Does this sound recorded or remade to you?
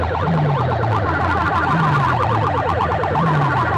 recorded